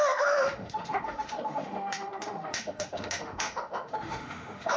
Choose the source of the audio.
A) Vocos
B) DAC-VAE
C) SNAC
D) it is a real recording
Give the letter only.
B